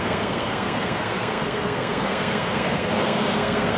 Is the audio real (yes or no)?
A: no